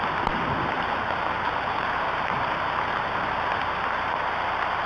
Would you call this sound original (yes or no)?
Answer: yes